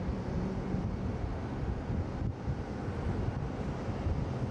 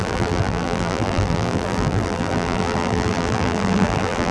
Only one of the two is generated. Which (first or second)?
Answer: second